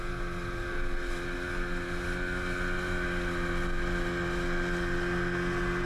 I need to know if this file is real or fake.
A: real